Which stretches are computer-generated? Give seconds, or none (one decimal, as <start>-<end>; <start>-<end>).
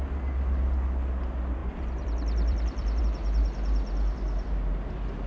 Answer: 1.6-3.0